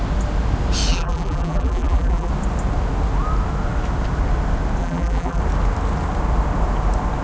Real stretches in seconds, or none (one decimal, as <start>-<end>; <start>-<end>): 0.0-0.9; 2.3-4.8; 5.4-7.2